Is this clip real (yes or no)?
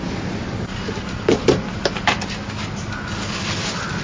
yes